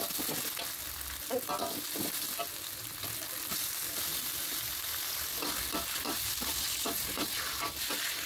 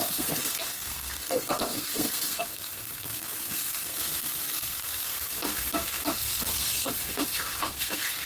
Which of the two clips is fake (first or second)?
second